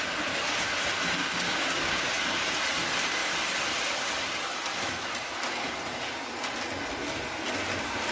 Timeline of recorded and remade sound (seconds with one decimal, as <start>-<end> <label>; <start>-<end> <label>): 0.0-1.2 recorded; 1.2-2.1 remade; 2.1-8.1 recorded